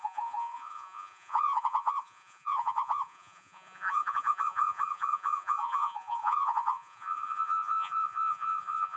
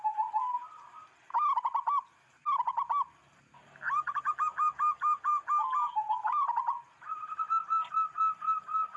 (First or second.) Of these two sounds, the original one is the second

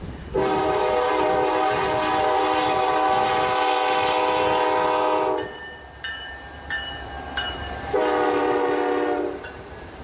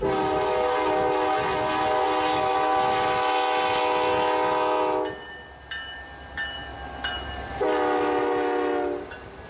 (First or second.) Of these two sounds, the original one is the second